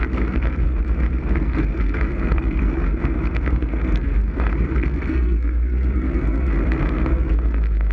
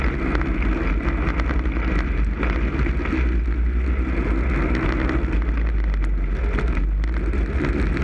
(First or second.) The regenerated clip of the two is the first